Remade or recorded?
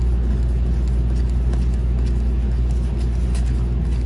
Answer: recorded